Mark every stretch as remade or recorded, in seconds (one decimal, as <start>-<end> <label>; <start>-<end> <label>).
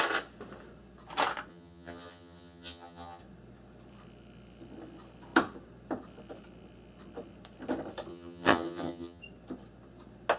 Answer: 0.0-1.5 recorded; 1.5-3.2 remade; 3.2-8.1 recorded; 8.1-9.2 remade; 9.2-10.4 recorded